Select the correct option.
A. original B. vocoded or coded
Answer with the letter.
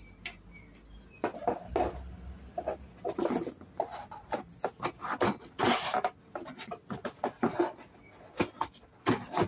A